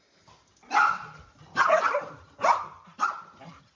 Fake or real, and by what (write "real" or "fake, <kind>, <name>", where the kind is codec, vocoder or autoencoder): real